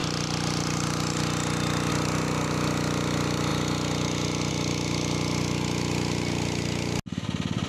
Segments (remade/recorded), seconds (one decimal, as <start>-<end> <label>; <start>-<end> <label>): 0.0-7.7 recorded